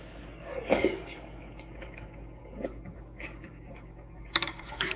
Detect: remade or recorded remade